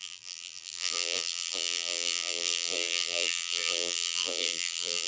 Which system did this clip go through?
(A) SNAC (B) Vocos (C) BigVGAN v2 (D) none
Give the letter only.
C